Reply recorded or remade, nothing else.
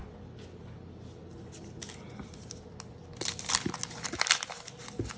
recorded